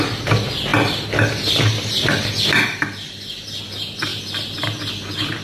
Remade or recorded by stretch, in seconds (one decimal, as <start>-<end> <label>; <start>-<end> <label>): 0.0-5.4 recorded